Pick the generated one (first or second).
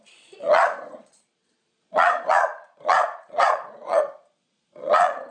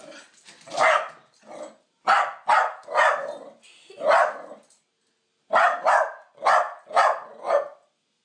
first